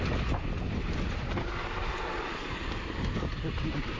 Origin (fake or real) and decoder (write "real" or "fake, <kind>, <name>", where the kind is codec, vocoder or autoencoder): real